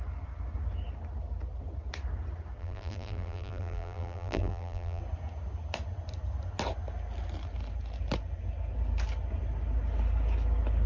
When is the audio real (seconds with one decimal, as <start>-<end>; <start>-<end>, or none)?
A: 0.0-2.6; 5.0-10.9